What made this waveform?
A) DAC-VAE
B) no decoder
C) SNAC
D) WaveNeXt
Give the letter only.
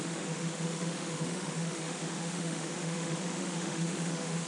A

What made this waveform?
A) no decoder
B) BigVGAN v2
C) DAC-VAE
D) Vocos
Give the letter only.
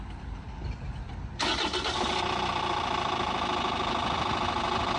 A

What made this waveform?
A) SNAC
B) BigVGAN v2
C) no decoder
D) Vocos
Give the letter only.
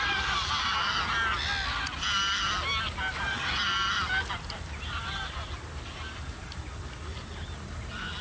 C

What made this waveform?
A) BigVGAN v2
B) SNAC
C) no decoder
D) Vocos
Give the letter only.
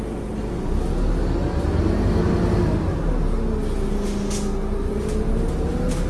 C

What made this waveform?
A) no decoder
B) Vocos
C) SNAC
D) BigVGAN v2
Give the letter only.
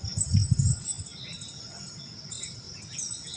A